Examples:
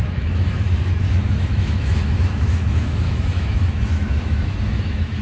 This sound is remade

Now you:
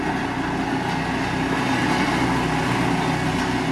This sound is recorded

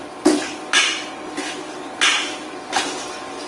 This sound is recorded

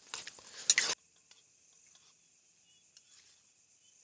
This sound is recorded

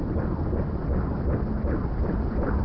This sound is recorded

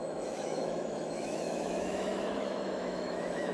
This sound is remade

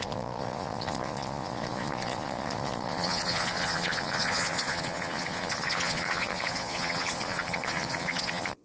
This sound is remade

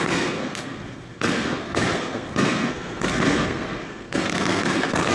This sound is remade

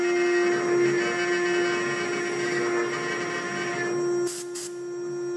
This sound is recorded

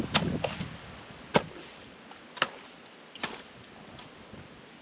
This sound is recorded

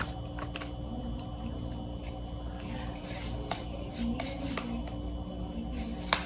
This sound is recorded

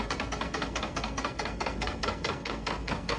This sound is remade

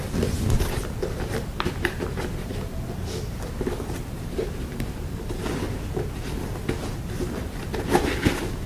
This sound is recorded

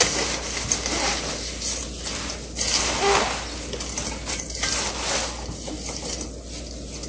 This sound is recorded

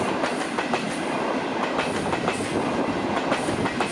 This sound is recorded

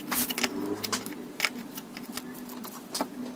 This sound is recorded